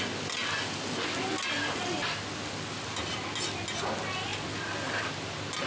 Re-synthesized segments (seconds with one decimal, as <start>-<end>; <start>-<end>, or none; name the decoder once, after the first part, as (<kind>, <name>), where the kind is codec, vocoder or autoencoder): none